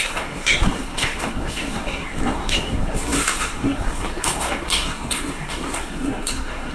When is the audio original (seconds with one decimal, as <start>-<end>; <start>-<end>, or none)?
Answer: none